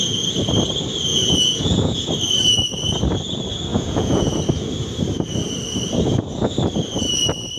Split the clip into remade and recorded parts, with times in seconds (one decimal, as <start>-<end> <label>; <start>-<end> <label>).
0.0-1.1 recorded; 1.1-2.1 remade; 2.1-3.7 recorded; 3.7-4.3 remade; 4.3-7.6 recorded